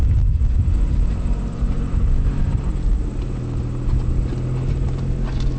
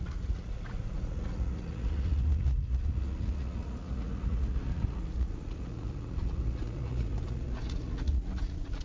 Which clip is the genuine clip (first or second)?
first